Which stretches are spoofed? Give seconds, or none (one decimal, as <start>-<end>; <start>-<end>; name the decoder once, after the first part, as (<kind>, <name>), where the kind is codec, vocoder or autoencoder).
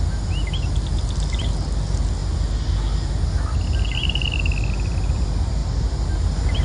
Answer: none